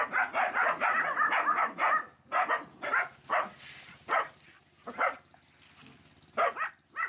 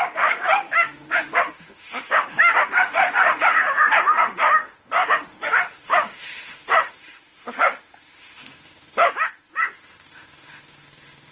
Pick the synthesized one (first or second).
second